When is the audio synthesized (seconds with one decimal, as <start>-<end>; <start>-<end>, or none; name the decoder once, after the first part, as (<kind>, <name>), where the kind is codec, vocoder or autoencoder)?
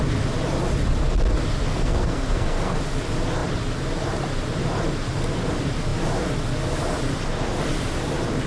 1.7-2.8 (codec, SNAC)